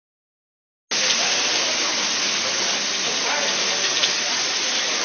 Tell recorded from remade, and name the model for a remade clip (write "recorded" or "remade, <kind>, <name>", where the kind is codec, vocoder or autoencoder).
recorded